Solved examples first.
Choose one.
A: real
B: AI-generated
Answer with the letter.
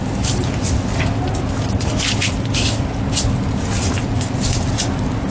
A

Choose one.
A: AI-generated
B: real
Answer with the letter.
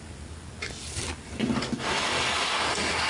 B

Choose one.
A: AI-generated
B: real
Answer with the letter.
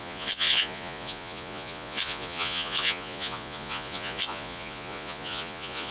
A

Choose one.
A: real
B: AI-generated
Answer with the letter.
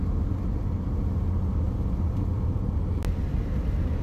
A